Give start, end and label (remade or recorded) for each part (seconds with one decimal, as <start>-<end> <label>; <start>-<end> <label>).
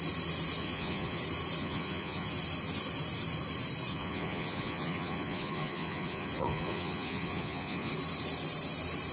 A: 0.0-0.6 recorded; 0.6-1.2 remade; 1.2-1.6 recorded; 1.6-2.3 remade; 2.3-3.9 recorded; 3.9-7.9 remade; 7.9-9.1 recorded